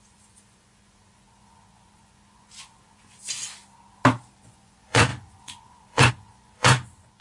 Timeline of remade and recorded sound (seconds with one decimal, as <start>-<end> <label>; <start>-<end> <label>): 0.0-3.2 remade; 3.2-4.4 recorded; 4.4-7.2 remade